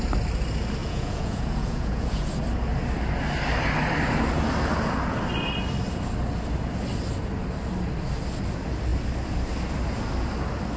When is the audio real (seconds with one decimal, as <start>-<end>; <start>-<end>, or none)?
0.0-0.8; 2.3-10.8